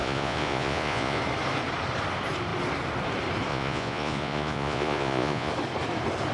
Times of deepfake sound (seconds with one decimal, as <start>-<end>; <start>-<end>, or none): 0.0-1.2; 3.5-5.5